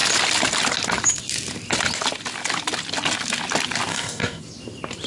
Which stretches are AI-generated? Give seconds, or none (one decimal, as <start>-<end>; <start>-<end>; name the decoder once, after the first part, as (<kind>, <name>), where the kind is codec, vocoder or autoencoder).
3.9-4.4 (codec, DAC)